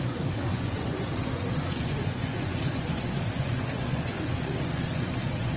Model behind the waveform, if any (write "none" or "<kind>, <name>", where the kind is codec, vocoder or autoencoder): vocoder, Vocos